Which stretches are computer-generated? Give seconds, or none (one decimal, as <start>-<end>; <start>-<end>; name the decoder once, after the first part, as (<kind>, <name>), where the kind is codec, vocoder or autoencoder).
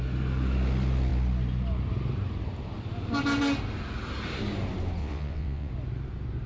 5.0-5.7 (vocoder, WaveNeXt)